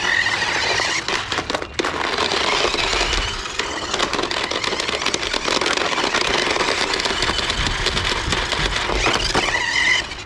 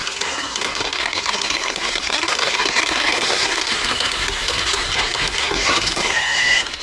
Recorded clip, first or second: first